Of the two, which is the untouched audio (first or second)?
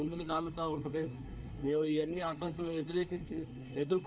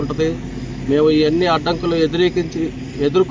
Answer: second